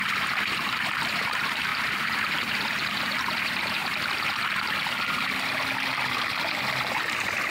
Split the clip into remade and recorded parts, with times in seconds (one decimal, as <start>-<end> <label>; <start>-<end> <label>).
0.0-3.8 remade; 3.8-7.1 recorded; 7.1-7.5 remade